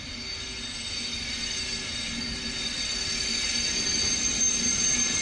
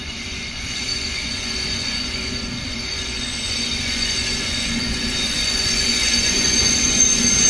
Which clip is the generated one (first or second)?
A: second